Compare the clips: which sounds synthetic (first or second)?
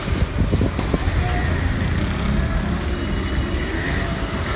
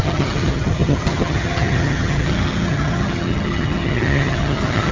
second